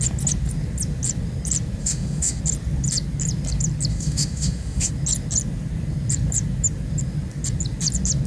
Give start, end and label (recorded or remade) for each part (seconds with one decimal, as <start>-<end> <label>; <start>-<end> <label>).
0.0-1.8 recorded; 1.8-2.4 remade; 2.4-3.9 recorded; 3.9-4.9 remade; 4.9-8.3 recorded